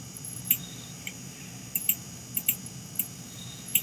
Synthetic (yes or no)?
yes